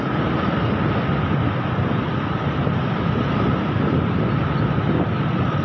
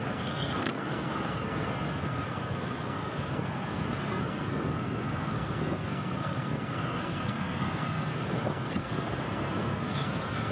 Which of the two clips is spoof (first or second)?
second